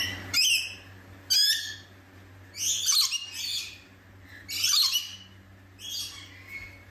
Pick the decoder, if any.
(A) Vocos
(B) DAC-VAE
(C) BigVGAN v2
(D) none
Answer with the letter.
D